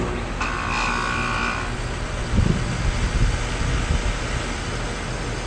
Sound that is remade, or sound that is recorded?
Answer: recorded